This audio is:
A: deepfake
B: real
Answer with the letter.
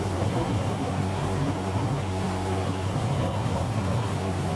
A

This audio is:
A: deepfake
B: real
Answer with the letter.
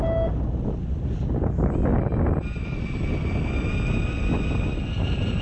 B